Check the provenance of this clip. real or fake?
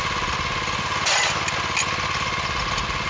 real